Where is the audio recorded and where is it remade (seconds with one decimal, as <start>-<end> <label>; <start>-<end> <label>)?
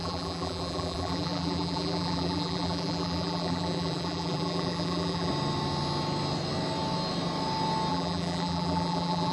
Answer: 0.0-5.3 remade; 5.3-7.9 recorded; 7.9-9.3 remade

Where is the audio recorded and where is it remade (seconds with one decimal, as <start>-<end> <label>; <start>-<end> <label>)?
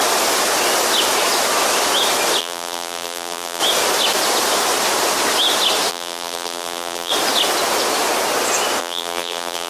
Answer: 0.0-2.4 recorded; 2.4-3.6 remade; 3.6-5.9 recorded; 5.9-7.1 remade; 7.1-8.8 recorded; 8.8-9.7 remade